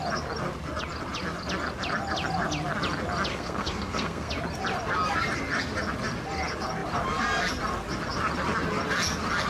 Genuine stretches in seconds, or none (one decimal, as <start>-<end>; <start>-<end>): 0.0-3.3; 4.3-9.5